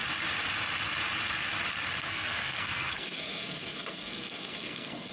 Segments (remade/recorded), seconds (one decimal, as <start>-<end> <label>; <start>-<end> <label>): 0.0-2.0 recorded; 2.0-5.1 remade